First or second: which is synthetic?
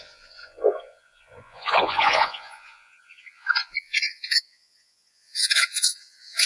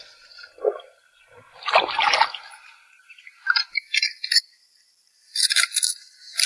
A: first